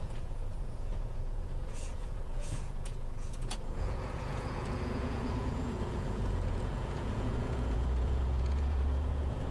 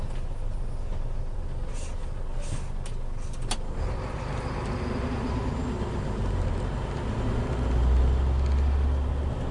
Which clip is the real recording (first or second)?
second